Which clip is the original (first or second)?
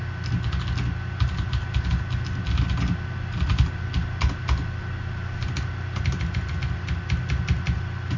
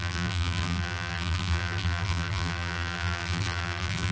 first